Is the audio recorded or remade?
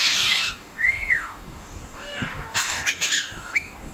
remade